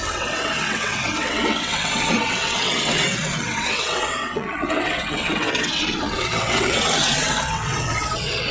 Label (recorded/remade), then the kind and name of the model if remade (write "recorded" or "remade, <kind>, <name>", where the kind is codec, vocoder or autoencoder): remade, vocoder, WaveNeXt